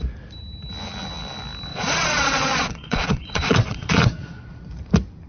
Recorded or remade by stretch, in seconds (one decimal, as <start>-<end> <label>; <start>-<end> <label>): 0.0-1.7 recorded; 1.7-4.7 remade; 4.7-5.3 recorded